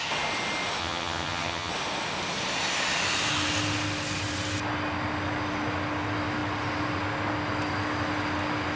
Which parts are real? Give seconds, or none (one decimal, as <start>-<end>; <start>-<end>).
0.0-0.8; 1.7-8.8